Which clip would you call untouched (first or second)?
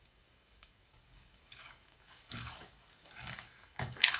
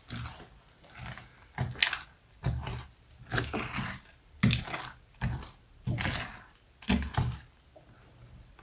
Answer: second